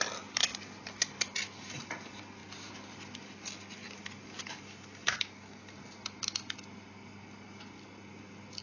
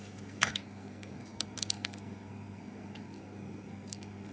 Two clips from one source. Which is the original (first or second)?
first